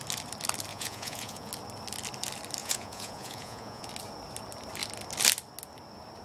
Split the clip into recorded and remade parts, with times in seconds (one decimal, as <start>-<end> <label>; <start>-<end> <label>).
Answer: 0.0-0.7 recorded; 0.7-1.5 remade; 1.5-2.6 recorded; 2.6-3.9 remade; 3.9-6.2 recorded